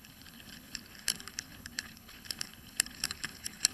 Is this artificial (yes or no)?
yes